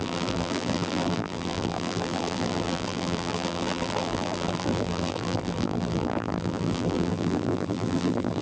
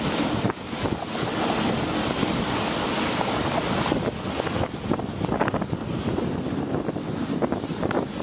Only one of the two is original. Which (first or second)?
second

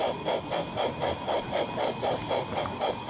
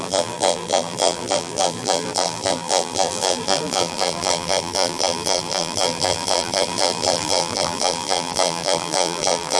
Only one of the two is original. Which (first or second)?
first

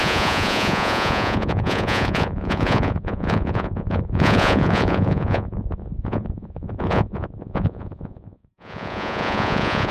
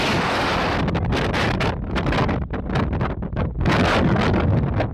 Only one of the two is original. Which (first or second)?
second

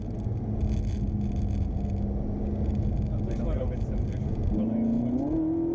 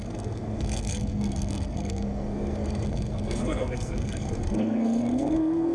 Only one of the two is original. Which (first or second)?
first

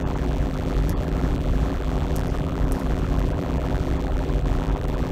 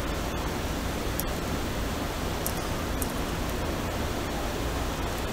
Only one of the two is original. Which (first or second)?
second